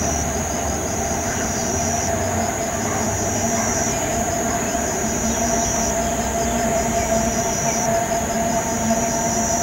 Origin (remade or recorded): remade